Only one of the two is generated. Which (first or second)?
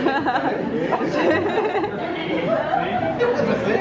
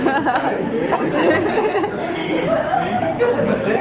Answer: second